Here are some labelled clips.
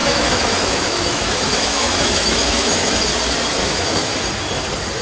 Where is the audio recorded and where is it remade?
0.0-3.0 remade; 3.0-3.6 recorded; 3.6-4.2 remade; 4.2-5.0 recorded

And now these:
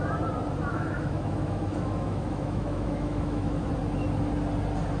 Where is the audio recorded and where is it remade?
0.0-0.7 recorded; 0.7-3.7 remade; 3.7-5.0 recorded

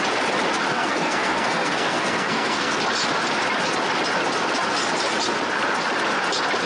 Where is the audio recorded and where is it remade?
0.0-0.7 recorded; 0.7-2.8 remade; 2.8-6.7 recorded

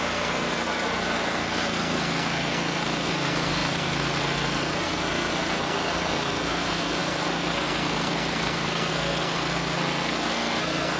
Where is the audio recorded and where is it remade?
0.0-11.0 remade

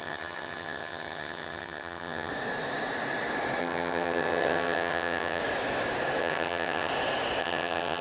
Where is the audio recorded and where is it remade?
0.0-2.3 remade; 2.3-3.6 recorded; 3.6-5.4 remade; 5.4-6.2 recorded; 6.2-6.9 remade; 6.9-7.4 recorded; 7.4-8.0 remade

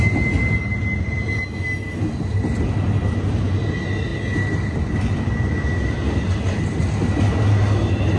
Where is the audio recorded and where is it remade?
0.0-8.2 recorded